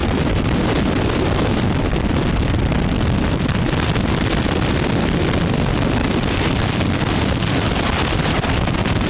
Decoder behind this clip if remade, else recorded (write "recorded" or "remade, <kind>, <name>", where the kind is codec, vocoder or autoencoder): remade, vocoder, BigVGAN v2